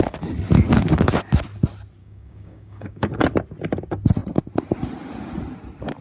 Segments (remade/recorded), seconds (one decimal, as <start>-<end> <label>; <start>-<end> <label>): 0.0-2.0 recorded; 2.0-3.1 remade; 3.1-6.0 recorded